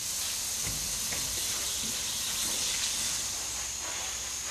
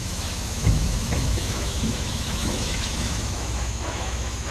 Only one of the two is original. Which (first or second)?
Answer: first